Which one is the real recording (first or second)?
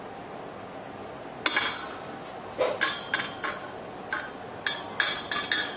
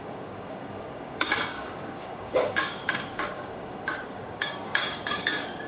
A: first